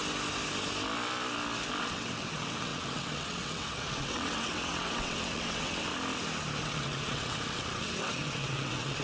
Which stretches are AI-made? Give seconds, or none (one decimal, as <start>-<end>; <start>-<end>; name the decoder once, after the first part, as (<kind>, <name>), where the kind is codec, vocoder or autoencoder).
1.8-5.9 (vocoder, WaveNeXt); 6.6-9.0